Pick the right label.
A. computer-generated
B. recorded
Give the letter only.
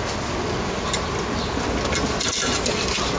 B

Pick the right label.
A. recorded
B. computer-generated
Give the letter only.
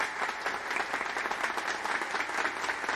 A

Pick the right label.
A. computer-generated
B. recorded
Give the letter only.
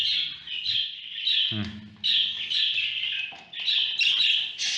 B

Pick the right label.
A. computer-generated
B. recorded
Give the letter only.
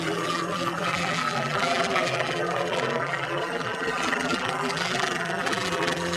A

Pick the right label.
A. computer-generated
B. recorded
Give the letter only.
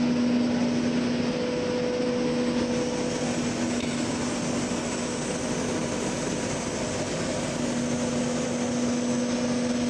B